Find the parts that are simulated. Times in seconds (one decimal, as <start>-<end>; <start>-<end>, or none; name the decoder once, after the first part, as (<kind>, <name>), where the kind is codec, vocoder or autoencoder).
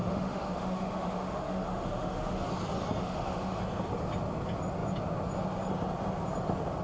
0.0-2.5 (autoencoder, DAC-VAE); 3.0-3.6